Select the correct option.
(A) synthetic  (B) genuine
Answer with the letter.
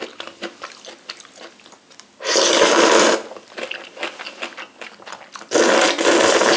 B